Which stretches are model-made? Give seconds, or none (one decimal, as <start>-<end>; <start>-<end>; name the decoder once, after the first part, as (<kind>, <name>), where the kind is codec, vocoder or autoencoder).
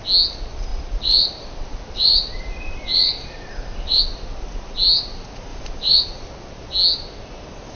0.7-4.0 (vocoder, BigVGAN v2); 5.5-6.0